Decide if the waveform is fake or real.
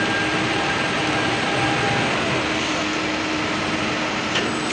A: real